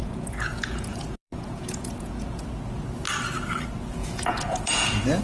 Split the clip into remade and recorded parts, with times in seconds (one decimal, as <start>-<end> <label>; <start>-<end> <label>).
0.0-2.5 remade; 2.5-4.0 recorded; 4.0-5.2 remade